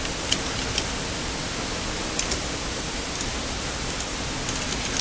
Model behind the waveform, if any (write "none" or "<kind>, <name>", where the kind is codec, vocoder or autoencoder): none